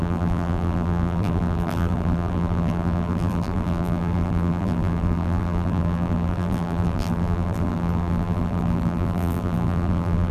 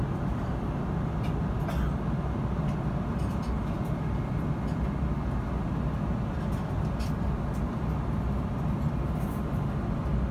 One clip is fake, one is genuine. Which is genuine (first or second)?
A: second